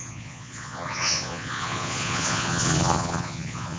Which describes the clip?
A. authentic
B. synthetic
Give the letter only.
B